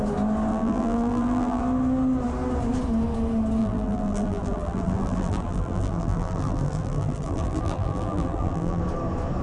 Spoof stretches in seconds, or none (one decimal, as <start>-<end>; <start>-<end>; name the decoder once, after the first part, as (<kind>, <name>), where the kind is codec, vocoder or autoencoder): 0.5-1.6 (vocoder, BigVGAN v2); 3.6-8.8